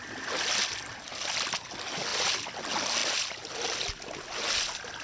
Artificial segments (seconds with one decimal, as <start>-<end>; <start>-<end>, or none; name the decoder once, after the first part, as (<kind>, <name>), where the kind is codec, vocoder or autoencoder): none